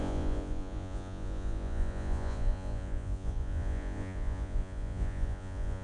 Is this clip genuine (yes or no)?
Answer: no